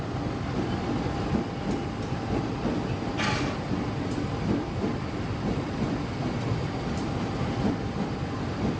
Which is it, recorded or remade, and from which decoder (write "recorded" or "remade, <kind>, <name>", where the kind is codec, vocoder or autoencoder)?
recorded